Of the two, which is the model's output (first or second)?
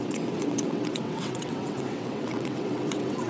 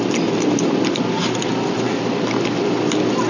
first